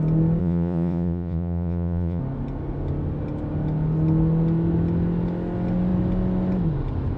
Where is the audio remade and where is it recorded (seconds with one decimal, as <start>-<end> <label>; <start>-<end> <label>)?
0.0-0.4 recorded; 0.4-2.2 remade; 2.2-7.2 recorded